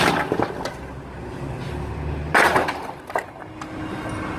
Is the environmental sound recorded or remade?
recorded